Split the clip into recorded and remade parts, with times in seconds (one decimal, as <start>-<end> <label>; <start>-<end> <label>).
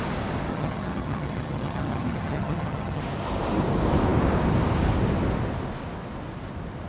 0.0-0.5 recorded; 0.5-3.0 remade; 3.0-6.9 recorded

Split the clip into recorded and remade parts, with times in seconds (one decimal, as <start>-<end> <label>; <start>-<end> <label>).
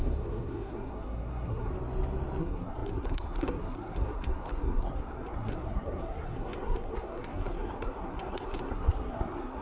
0.0-1.7 remade; 1.7-2.4 recorded; 2.4-9.6 remade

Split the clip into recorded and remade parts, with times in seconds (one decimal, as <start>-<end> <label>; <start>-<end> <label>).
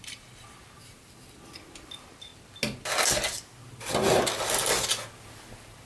0.0-5.9 recorded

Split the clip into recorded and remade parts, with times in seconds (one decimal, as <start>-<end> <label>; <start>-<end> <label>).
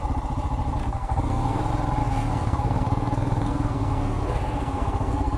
0.0-0.8 recorded; 0.8-1.6 remade; 1.6-2.0 recorded; 2.0-5.4 remade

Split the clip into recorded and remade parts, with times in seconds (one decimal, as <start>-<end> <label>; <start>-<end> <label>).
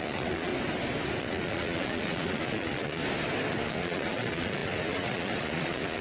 0.0-0.5 remade; 0.5-1.2 recorded; 1.2-3.0 remade; 3.0-3.5 recorded; 3.5-6.0 remade